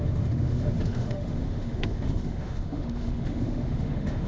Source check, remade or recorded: remade